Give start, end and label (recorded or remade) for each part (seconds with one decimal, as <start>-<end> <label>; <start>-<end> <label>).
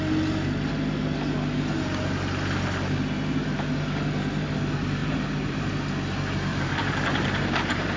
0.0-5.0 recorded; 5.0-5.7 remade; 5.7-6.5 recorded; 6.5-8.0 remade